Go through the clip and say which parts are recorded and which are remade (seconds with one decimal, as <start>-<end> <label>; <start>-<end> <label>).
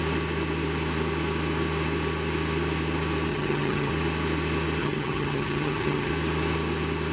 0.0-3.3 recorded; 3.3-3.9 remade; 3.9-4.8 recorded; 4.8-6.1 remade; 6.1-7.1 recorded